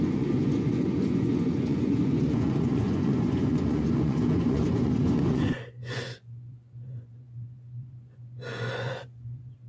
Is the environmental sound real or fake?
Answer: fake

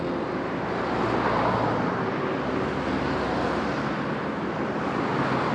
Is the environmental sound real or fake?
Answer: real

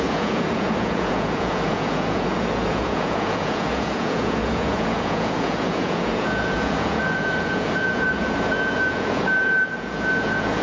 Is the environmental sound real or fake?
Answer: fake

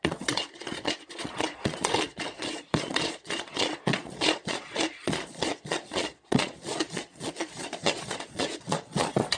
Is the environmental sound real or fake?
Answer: fake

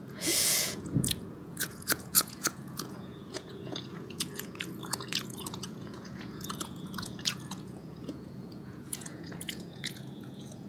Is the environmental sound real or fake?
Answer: fake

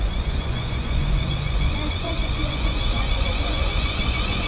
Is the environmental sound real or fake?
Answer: fake